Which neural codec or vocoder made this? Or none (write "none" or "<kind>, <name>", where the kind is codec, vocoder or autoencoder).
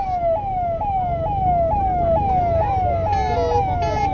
none